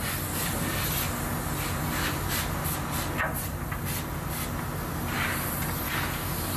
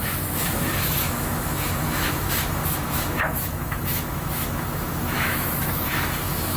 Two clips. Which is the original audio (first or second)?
first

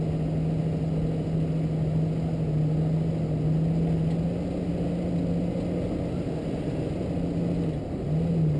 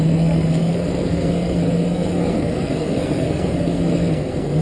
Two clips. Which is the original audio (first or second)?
first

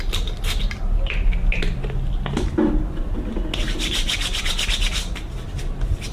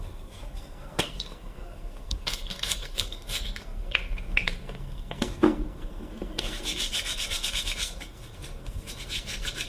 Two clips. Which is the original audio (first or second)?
first